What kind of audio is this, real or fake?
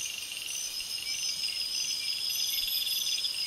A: fake